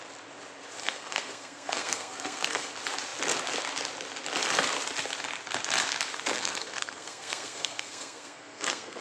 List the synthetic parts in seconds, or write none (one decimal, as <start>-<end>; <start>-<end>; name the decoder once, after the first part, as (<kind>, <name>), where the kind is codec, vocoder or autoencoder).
0.8-2.7 (codec, SNAC); 6.3-9.0